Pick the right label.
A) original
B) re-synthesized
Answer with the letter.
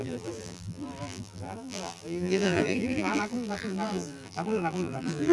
B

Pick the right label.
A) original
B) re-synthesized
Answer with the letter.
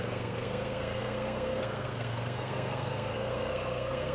B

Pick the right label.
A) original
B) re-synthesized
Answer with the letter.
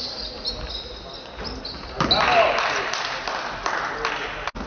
A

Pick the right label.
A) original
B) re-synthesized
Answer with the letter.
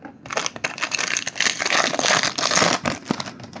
A